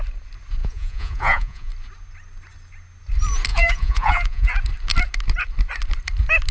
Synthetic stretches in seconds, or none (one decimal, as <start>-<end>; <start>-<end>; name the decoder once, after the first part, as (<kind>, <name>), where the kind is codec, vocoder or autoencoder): 0.6-1.7 (vocoder, Vocos); 3.5-4.5